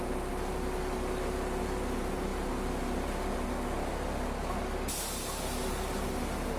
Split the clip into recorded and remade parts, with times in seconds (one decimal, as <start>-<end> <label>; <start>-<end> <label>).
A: 0.0-6.6 recorded